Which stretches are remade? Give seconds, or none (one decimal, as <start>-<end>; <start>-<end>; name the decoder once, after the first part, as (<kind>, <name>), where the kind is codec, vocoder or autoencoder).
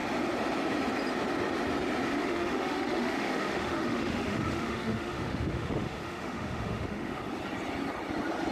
2.1-7.2 (autoencoder, DAC-VAE)